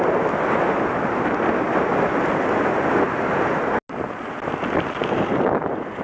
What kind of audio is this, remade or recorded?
recorded